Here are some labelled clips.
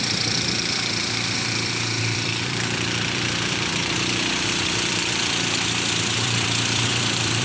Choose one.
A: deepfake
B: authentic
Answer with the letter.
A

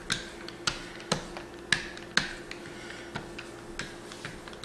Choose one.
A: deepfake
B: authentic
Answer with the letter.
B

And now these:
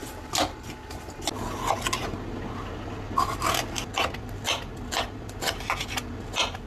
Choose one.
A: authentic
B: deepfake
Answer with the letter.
A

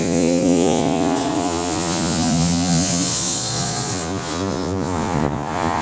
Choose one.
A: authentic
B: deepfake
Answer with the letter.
B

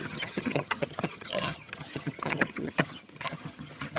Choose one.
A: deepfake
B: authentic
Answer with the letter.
A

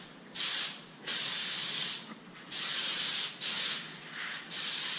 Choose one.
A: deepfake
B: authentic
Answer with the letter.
B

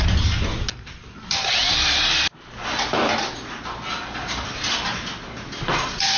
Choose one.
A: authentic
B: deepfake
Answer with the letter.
A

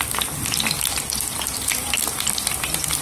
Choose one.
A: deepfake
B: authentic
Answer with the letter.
A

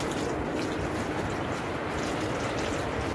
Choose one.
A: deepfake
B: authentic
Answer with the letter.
B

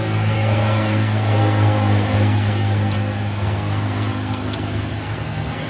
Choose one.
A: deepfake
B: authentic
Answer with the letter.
A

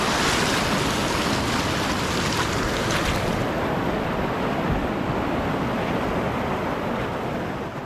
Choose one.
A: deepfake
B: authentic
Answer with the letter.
B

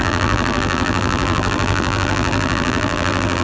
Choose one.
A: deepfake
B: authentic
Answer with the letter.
A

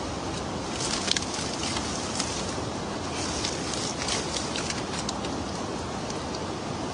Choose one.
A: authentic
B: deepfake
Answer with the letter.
A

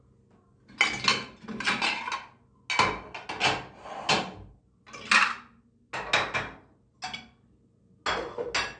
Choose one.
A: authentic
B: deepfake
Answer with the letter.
A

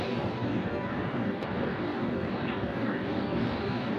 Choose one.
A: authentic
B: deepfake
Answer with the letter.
B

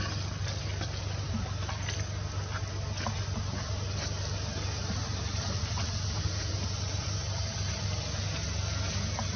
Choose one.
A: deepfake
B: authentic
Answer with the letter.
B